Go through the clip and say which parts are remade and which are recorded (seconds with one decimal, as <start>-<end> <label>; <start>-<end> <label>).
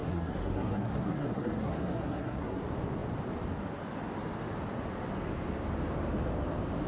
0.0-2.6 remade; 2.6-6.9 recorded